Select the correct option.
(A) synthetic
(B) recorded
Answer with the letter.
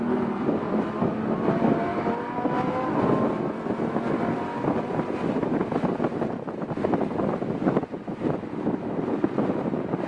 A